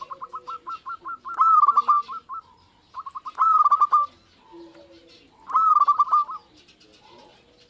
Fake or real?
real